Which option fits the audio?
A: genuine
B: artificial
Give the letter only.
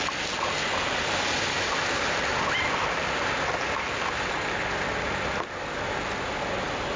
A